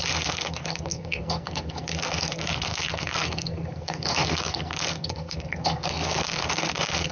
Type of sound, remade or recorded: remade